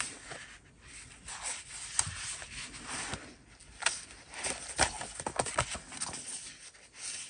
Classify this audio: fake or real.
real